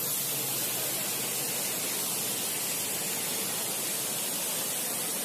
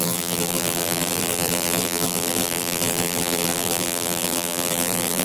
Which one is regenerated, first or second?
second